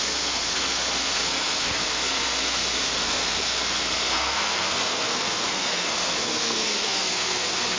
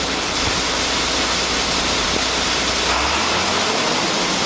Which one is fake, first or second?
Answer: first